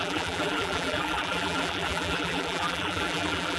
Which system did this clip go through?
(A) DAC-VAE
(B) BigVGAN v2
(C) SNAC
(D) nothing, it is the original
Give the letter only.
B